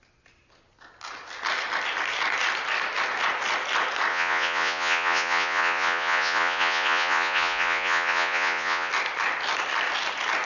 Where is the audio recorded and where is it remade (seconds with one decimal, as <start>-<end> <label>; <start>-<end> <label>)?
0.0-4.1 recorded; 4.1-8.9 remade; 8.9-10.4 recorded